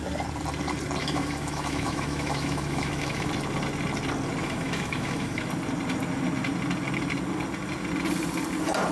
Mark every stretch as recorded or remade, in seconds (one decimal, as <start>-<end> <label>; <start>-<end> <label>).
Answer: 0.0-1.0 recorded; 1.0-3.3 remade; 3.3-4.4 recorded; 4.4-5.4 remade; 5.4-8.9 recorded